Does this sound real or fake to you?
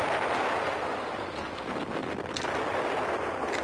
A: real